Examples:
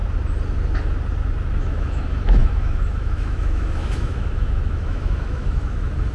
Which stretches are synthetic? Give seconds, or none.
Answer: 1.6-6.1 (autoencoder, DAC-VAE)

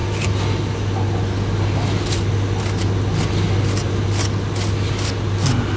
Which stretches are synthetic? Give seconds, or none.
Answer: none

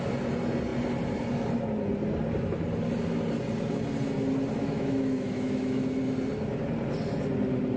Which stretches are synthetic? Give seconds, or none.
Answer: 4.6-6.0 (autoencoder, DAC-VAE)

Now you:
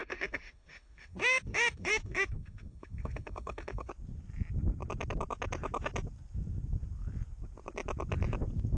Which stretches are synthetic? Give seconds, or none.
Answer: 0.0-3.9 (autoencoder, DAC-VAE)

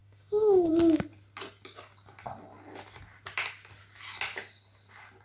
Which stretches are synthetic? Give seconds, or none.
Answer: 0.0-0.7 (autoencoder, DAC-VAE)

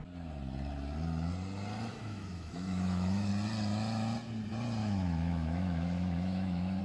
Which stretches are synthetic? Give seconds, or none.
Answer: 1.9-3.3 (autoencoder, DAC-VAE); 4.8-6.8

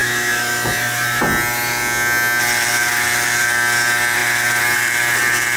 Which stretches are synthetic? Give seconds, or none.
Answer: 0.0-1.2 (autoencoder, DAC-VAE)

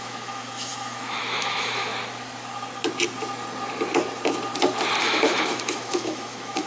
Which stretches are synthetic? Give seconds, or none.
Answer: 0.0-1.9 (autoencoder, DAC-VAE); 5.0-6.7